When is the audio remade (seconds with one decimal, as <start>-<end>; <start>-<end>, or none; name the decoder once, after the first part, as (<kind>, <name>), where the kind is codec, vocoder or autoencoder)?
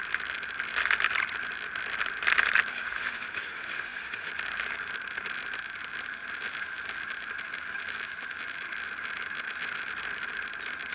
2.7-4.3 (autoencoder, DAC-VAE)